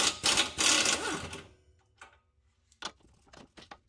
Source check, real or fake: real